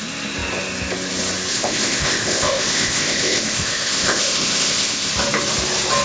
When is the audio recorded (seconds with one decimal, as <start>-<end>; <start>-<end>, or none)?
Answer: 0.0-1.5; 5.1-6.0

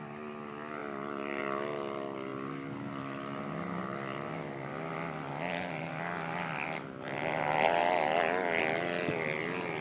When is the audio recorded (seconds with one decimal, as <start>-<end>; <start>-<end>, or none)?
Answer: 0.0-9.8

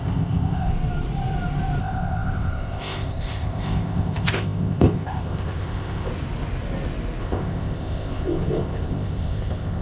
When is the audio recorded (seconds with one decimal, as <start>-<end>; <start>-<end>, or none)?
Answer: 0.7-1.8; 6.1-7.2

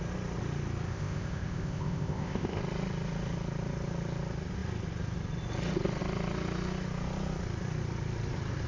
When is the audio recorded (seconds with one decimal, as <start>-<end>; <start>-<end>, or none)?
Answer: 0.0-0.9; 2.6-8.7

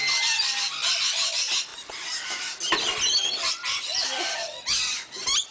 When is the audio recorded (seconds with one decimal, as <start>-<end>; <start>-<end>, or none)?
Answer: 0.0-5.5

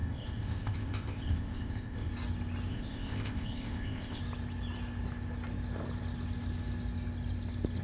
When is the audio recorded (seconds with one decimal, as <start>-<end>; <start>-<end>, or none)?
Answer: 2.1-2.7; 4.2-7.8

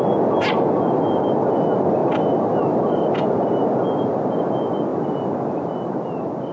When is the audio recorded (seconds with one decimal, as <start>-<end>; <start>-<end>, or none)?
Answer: 0.0-6.5